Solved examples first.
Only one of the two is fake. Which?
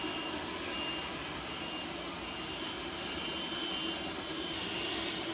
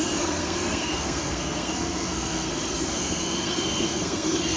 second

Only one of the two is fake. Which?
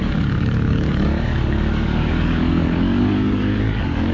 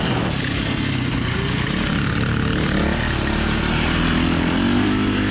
first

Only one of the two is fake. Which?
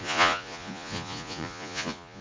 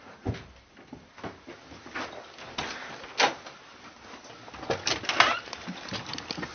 first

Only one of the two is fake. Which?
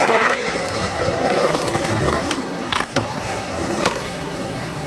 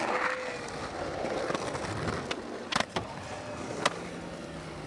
first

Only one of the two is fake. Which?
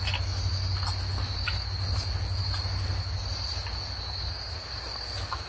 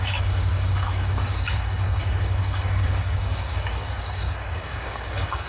second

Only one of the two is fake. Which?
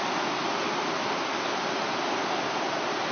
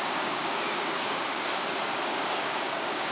second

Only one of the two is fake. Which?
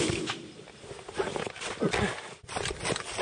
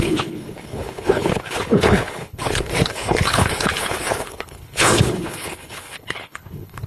second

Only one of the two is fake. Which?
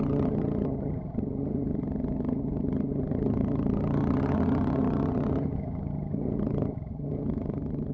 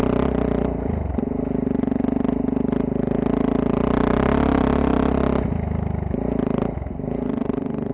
first